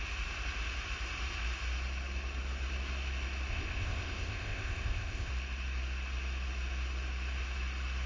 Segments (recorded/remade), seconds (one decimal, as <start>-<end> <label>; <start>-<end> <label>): 0.0-3.5 recorded; 3.5-5.3 remade; 5.3-8.1 recorded